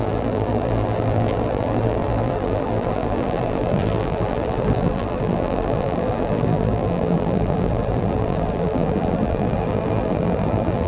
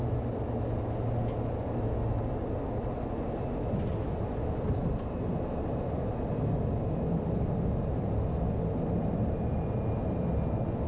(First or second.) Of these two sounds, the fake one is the first